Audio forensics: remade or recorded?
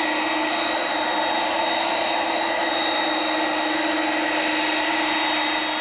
recorded